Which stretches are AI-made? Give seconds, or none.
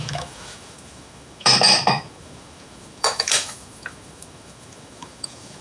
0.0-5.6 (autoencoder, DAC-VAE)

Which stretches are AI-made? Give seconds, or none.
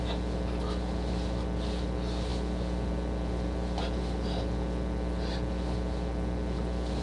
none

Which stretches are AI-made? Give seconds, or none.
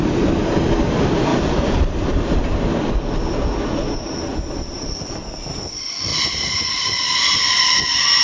1.3-2.4 (vocoder, BigVGAN v2); 6.1-6.9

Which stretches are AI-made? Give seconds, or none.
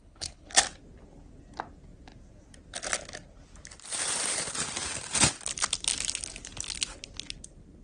0.0-0.6 (codec, HILCodec)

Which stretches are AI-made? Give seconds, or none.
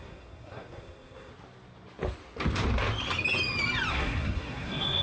0.0-1.3 (codec, SNAC); 3.9-5.0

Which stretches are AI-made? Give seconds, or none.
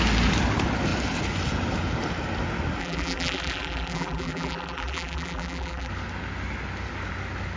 2.8-5.9 (vocoder, BigVGAN v2)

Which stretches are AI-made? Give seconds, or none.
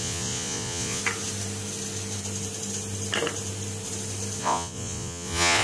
0.0-1.0 (vocoder, Vocos); 4.4-5.6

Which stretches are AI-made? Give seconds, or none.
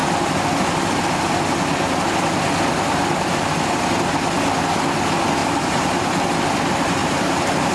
5.4-6.3 (vocoder, BigVGAN v2); 7.0-7.7